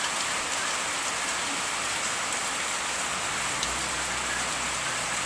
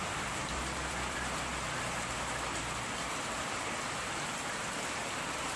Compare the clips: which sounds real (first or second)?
first